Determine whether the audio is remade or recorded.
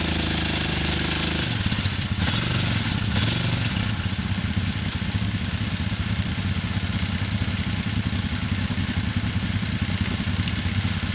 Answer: recorded